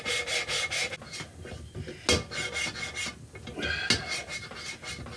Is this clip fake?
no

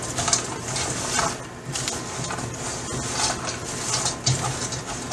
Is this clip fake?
no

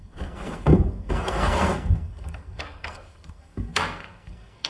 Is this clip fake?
yes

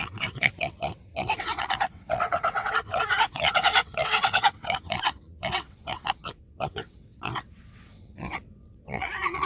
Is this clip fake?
yes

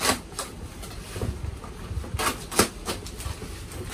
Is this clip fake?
no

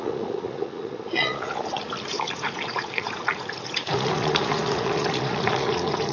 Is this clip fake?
yes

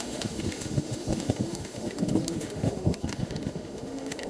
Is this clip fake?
yes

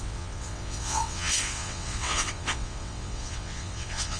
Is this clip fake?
yes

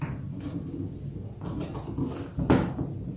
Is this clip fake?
no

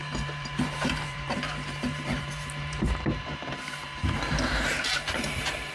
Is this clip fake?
yes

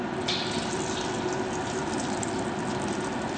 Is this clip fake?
no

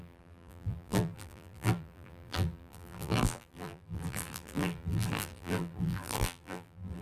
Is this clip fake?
yes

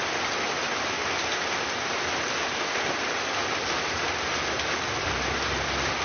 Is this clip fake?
no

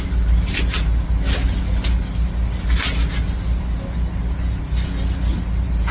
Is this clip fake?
no